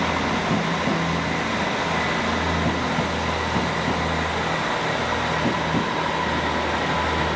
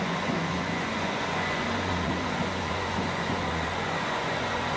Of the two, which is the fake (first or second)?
second